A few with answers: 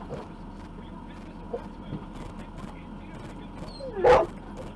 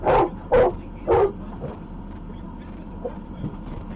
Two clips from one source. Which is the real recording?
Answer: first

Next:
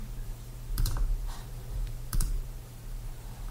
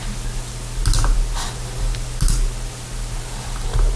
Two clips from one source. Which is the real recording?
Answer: second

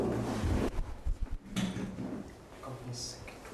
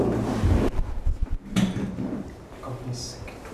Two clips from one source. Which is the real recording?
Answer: first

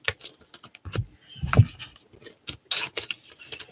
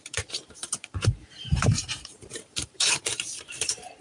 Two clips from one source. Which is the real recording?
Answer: first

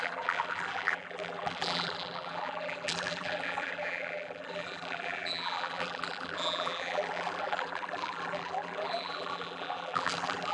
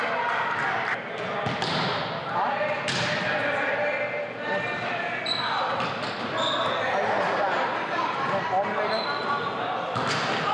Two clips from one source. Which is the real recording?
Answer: second